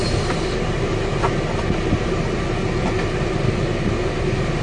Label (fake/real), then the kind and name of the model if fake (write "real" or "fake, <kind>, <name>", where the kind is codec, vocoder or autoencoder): real